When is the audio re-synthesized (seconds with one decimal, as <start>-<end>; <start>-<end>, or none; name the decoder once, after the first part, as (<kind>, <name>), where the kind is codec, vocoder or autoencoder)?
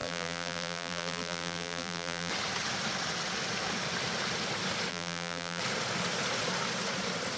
0.0-2.3 (vocoder, BigVGAN v2); 4.9-5.6